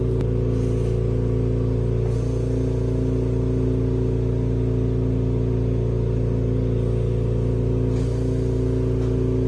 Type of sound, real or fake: real